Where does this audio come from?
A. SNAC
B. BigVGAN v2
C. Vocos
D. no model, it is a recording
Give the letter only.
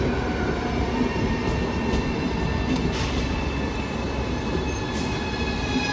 D